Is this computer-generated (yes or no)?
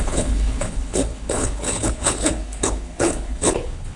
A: yes